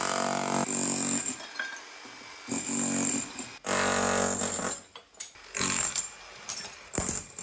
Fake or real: real